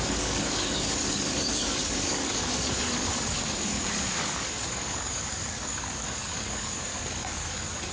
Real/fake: fake